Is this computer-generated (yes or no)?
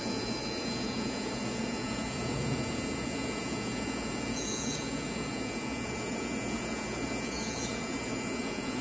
yes